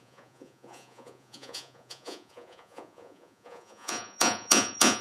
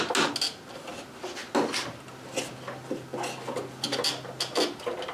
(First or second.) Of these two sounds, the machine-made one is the first